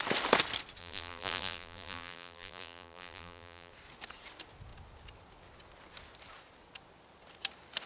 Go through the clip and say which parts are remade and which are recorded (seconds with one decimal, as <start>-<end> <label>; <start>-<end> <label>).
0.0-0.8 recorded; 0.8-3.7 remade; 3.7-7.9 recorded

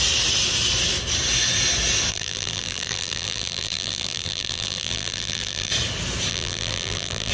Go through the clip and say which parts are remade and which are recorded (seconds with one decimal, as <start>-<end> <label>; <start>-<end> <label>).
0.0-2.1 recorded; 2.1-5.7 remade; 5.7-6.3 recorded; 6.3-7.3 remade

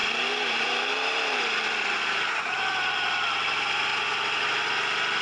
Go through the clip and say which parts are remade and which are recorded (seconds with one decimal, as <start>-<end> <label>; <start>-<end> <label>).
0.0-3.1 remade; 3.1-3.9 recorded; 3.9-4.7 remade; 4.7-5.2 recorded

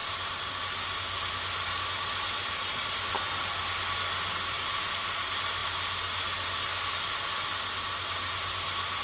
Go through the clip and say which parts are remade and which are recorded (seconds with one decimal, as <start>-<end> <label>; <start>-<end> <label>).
0.0-0.5 remade; 0.5-9.0 recorded

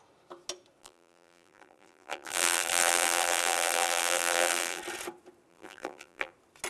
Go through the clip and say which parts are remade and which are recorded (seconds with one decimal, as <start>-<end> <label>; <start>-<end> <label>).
0.0-0.8 recorded; 0.8-4.8 remade; 4.8-5.5 recorded; 5.5-6.3 remade; 6.3-6.7 recorded